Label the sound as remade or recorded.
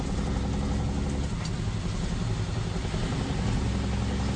recorded